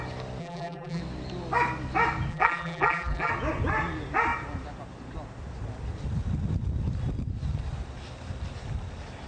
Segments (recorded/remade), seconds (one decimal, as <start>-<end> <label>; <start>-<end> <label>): 0.0-0.4 recorded; 0.4-1.0 remade; 1.0-2.3 recorded; 2.3-3.3 remade; 3.3-9.3 recorded